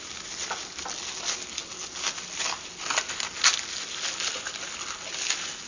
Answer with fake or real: real